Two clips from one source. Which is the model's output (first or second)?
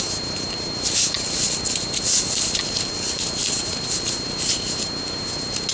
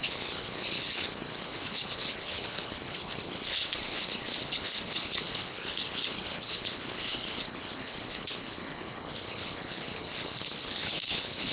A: second